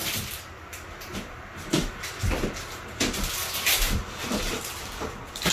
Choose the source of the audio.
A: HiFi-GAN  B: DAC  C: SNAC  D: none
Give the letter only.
D